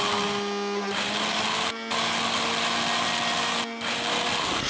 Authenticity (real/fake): real